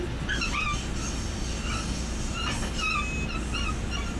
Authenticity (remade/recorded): recorded